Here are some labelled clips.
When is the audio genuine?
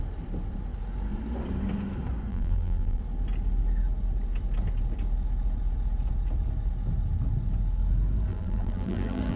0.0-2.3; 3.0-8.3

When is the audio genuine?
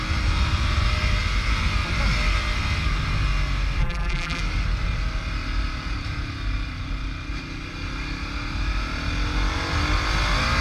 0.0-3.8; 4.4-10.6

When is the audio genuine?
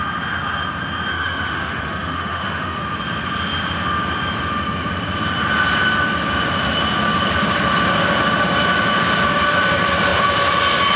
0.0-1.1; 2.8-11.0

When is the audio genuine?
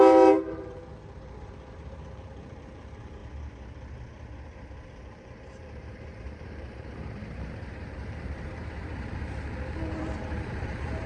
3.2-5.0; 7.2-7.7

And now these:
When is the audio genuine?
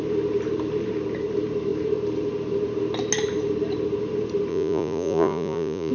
0.0-4.5